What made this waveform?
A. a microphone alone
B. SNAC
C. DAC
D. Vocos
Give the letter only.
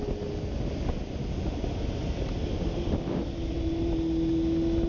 A